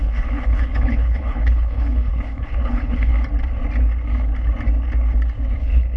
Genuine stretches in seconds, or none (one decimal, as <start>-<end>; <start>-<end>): 3.1-5.6